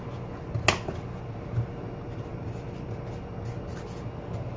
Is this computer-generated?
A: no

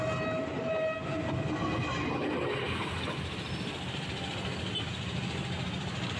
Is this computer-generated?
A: no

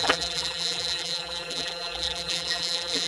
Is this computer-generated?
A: yes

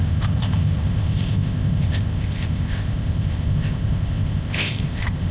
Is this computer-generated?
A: yes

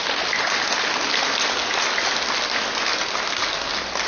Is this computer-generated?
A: no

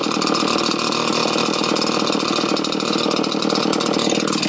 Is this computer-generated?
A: no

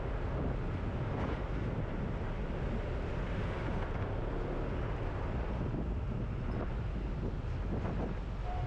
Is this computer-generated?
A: no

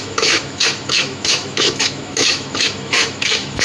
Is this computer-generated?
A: yes